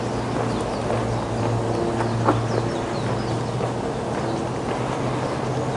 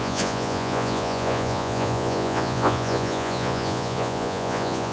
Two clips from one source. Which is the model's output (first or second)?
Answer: second